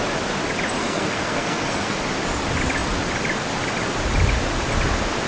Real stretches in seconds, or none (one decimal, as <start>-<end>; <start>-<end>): 0.0-0.8; 2.0-5.3